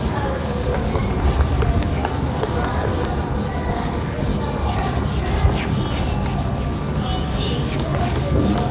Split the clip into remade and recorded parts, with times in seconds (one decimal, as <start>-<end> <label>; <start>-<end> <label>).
0.0-1.0 remade; 1.0-1.5 recorded; 1.5-2.9 remade; 2.9-3.7 recorded; 3.7-4.3 remade; 4.3-6.4 recorded; 6.4-8.7 remade